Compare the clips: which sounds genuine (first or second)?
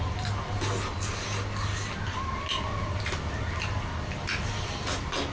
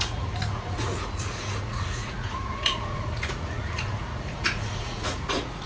first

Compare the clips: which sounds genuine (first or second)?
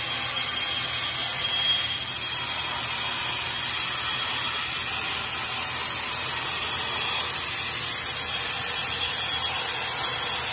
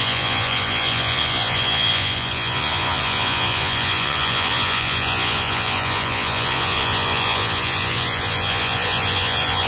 first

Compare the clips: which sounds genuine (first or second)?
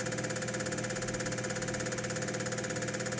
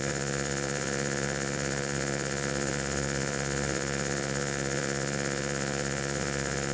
first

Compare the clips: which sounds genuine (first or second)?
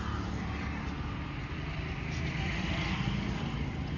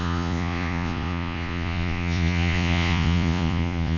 first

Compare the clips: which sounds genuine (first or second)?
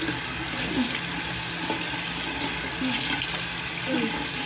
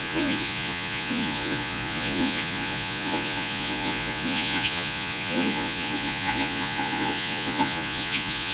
first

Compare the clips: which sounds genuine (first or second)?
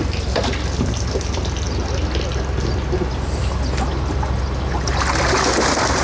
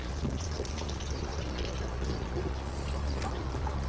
first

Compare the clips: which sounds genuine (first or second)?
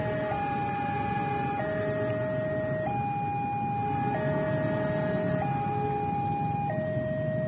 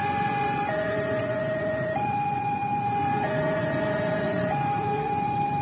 first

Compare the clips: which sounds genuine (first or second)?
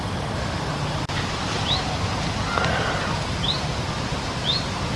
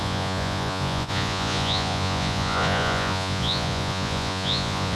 first